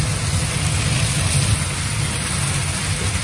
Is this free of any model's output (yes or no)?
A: yes